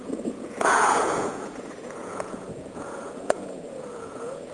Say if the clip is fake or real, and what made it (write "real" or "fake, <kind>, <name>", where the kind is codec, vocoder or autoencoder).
fake, vocoder, Vocos